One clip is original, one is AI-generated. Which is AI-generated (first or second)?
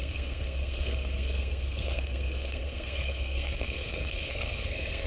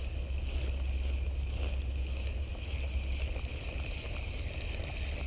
first